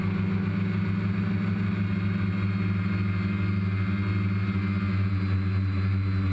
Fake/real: real